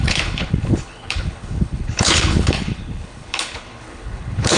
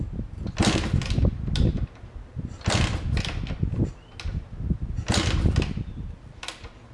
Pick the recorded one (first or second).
second